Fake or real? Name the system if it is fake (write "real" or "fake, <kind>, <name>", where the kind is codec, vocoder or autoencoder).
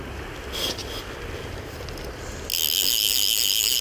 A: real